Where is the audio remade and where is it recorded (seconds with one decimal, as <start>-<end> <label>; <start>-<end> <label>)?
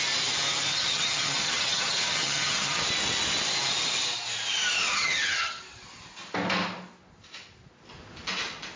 0.0-0.7 recorded; 0.7-2.8 remade; 2.8-4.9 recorded; 4.9-5.6 remade; 5.6-8.8 recorded